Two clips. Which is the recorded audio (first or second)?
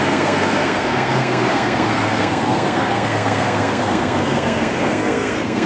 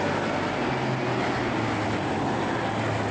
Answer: second